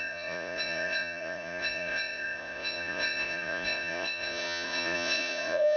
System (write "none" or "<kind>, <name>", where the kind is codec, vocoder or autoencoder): vocoder, Vocos